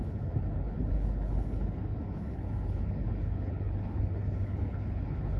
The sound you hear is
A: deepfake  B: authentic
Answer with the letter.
A